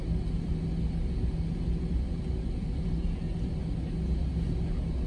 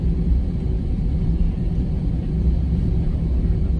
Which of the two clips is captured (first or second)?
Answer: first